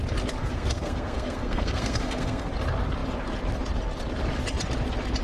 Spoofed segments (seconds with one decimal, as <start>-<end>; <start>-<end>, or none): 0.4-2.5